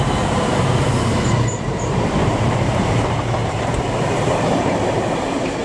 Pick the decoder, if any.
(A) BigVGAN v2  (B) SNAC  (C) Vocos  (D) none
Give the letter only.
A